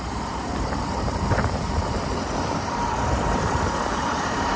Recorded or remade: remade